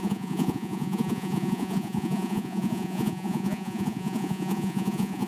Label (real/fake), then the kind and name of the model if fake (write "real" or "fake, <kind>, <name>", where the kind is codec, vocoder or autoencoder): fake, vocoder, Vocos